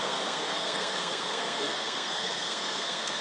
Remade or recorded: remade